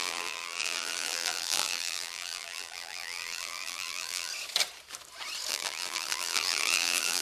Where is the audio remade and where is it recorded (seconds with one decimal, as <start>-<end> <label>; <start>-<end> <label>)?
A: 0.0-4.3 remade; 4.3-5.5 recorded; 5.5-7.2 remade